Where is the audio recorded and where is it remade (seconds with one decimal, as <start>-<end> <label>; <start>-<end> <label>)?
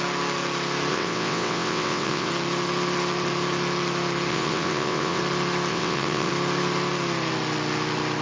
0.0-0.9 recorded; 0.9-2.3 remade; 2.3-4.3 recorded; 4.3-5.2 remade; 5.2-5.7 recorded; 5.7-6.3 remade; 6.3-8.2 recorded